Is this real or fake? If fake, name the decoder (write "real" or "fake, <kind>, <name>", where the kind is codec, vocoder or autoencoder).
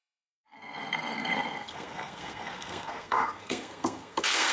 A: fake, codec, SNAC